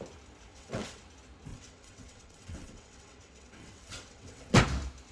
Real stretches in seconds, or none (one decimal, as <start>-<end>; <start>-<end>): 0.0-0.5; 1.0-1.5; 4.6-5.1